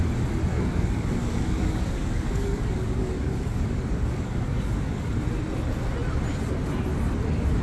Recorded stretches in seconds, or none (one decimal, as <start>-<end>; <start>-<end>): 0.0-0.5; 5.1-7.6